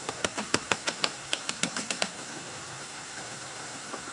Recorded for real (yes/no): no